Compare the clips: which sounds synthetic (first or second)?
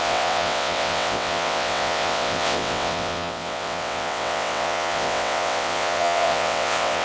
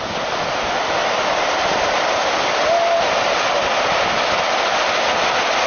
first